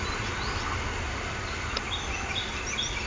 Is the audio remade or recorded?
recorded